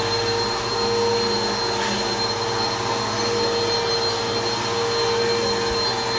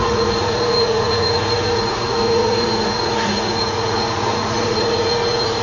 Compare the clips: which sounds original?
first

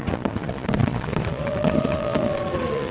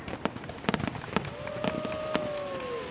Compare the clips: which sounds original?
second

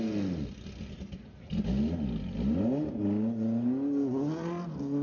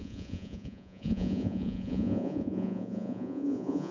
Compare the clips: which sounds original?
first